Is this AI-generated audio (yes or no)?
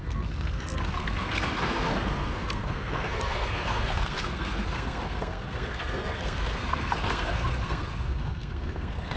yes